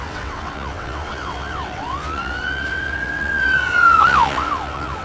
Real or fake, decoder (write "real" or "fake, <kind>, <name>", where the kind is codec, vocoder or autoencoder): fake, vocoder, WaveNeXt